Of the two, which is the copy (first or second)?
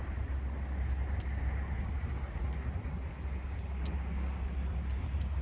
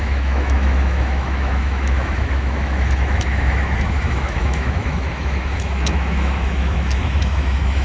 second